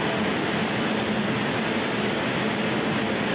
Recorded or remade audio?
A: recorded